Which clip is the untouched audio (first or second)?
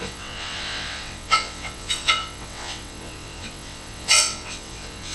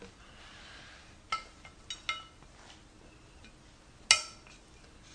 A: second